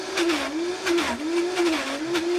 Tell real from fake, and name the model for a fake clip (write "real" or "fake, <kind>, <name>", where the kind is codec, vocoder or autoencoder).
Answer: real